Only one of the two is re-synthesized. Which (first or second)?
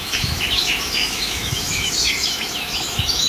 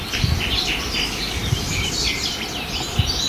first